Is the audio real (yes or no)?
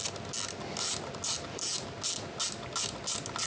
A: yes